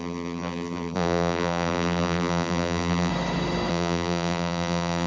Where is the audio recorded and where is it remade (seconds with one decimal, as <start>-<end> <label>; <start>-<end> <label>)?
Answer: 0.0-3.1 remade; 3.1-3.7 recorded; 3.7-5.1 remade